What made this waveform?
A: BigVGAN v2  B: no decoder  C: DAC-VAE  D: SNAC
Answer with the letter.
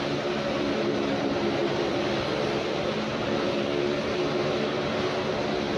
B